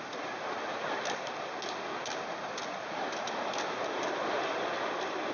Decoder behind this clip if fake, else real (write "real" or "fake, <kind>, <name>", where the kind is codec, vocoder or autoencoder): real